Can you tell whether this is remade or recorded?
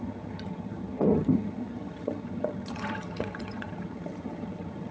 remade